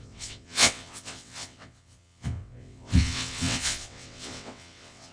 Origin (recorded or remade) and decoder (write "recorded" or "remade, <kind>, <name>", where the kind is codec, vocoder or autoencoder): remade, vocoder, WaveNeXt